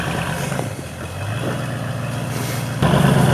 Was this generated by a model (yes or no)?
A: no